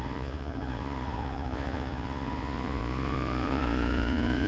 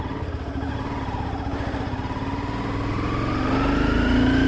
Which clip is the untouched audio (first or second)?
second